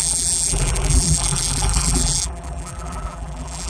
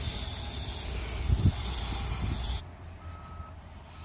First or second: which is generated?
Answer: first